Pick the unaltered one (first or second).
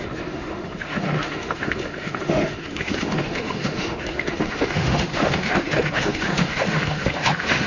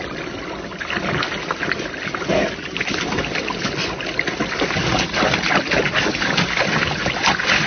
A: second